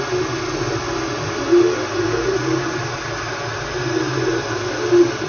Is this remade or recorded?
recorded